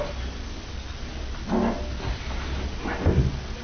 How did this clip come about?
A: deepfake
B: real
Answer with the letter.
B